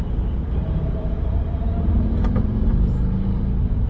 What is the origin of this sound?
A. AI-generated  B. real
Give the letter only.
B